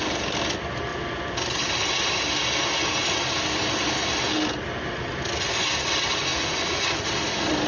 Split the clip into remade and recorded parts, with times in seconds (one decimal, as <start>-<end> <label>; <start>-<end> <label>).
0.0-6.3 recorded; 6.3-7.1 remade; 7.1-7.7 recorded